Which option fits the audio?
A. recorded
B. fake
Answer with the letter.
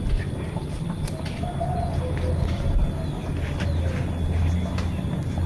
A